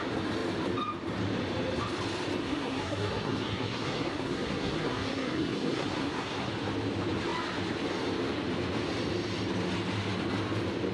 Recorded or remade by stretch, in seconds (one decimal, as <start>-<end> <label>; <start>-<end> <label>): 0.0-2.4 recorded; 2.4-6.5 remade; 6.5-10.9 recorded